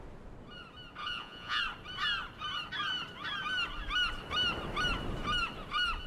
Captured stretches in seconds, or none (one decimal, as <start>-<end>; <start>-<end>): 0.0-1.0; 1.6-6.1